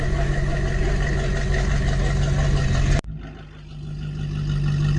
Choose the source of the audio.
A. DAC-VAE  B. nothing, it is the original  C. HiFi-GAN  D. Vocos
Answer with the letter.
B